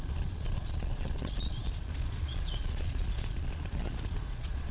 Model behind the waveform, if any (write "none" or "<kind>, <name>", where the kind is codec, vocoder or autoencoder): vocoder, Vocos